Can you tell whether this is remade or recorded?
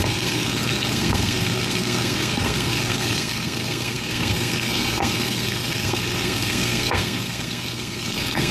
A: remade